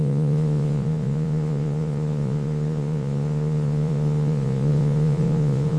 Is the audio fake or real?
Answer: fake